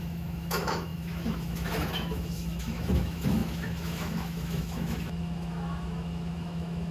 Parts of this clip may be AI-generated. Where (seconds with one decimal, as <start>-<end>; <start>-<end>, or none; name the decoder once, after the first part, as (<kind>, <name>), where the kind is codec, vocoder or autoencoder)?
0.0-6.9 (autoencoder, DAC-VAE)

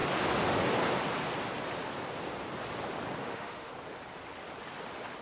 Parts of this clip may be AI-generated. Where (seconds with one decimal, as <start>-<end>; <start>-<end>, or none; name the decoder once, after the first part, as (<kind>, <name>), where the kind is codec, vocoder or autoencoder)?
3.2-3.7 (autoencoder, DAC-VAE)

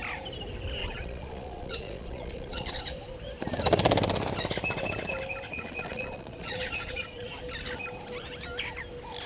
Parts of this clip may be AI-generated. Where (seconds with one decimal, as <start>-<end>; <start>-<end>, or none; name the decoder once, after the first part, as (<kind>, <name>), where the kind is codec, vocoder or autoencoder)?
0.8-2.8 (vocoder, Vocos); 5.5-7.3